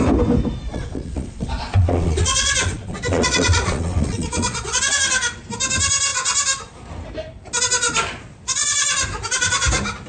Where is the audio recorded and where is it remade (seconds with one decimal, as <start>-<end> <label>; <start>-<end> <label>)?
0.0-0.7 recorded; 0.7-4.8 remade; 4.8-10.1 recorded